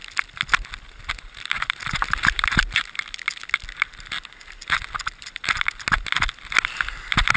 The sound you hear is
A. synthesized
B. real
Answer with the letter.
B